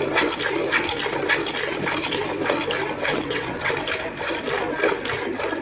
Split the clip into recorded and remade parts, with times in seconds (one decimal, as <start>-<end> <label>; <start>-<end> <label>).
0.0-3.1 recorded; 3.1-3.7 remade; 3.7-5.6 recorded